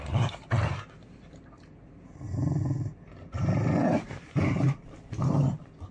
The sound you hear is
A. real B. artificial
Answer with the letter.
B